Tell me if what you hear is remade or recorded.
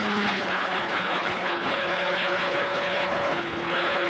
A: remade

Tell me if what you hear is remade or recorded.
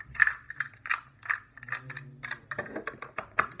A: recorded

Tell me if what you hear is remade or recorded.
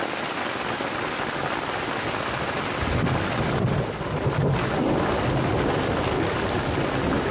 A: recorded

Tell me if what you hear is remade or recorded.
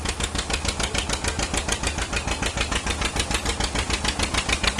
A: recorded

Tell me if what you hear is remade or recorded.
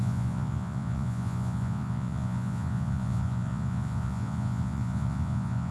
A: remade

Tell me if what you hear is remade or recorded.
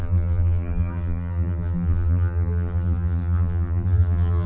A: remade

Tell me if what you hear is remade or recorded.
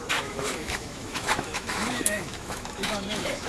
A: remade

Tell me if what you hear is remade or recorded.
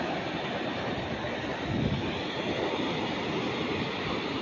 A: recorded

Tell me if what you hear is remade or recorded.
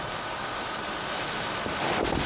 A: recorded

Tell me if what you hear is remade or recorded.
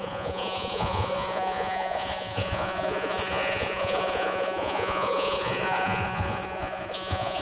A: remade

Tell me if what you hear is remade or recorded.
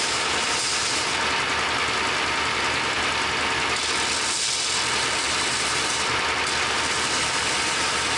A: recorded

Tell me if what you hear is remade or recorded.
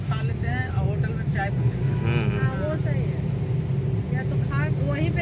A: recorded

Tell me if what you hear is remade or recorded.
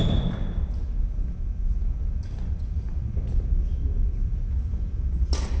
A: recorded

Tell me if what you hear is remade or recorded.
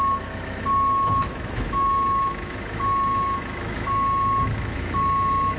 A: remade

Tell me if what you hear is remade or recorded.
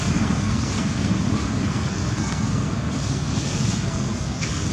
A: remade